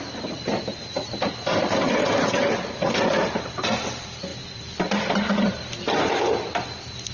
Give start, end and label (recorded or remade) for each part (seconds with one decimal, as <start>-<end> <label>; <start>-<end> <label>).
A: 0.0-7.1 recorded